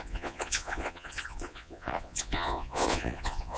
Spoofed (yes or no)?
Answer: yes